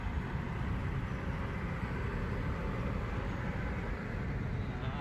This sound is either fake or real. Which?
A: real